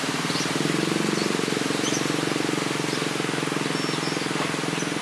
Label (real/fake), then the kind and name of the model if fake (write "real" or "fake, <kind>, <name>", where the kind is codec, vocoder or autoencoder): real